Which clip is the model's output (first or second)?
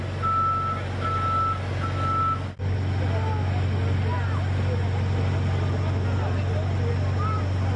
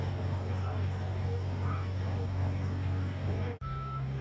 second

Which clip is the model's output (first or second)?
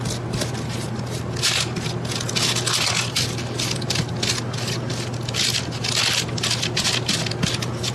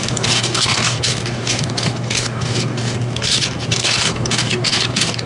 second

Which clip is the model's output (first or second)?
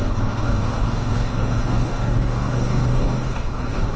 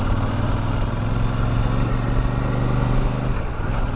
first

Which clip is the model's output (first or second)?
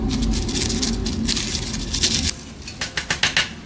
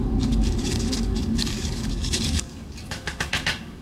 second